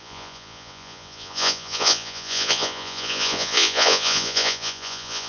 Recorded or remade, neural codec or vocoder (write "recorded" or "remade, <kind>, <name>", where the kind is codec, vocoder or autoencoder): remade, vocoder, Vocos